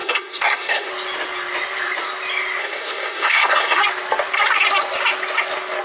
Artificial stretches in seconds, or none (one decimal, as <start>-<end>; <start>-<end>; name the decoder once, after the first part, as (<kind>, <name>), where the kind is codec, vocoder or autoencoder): 0.0-0.9 (codec, SNAC); 2.6-3.8